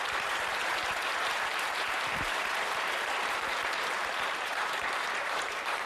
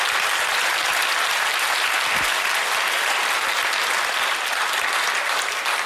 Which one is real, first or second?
second